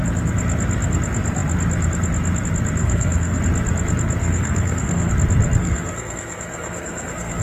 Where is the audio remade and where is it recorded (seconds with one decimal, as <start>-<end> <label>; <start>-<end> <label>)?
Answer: 0.0-2.8 recorded; 2.8-3.4 remade; 3.4-4.2 recorded; 4.2-5.1 remade; 5.1-5.6 recorded; 5.6-7.4 remade